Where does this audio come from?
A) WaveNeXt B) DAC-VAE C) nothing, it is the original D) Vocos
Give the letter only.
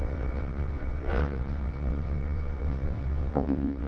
A